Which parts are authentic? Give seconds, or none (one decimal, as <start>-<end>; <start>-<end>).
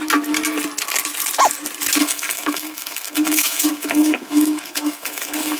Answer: 0.0-2.0